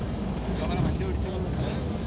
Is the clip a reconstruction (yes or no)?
no